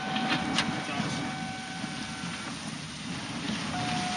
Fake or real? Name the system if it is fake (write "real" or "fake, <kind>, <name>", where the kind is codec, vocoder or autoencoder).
real